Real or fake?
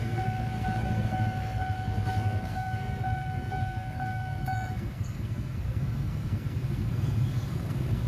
fake